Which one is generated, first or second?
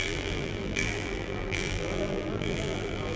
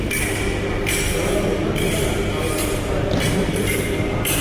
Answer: first